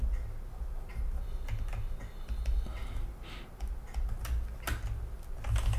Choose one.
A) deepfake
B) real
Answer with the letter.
B